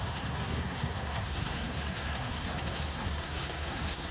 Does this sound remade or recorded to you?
remade